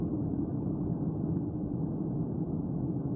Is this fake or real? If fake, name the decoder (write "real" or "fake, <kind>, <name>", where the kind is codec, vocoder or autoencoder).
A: real